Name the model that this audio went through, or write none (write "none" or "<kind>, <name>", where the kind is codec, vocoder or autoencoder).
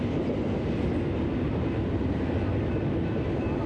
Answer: none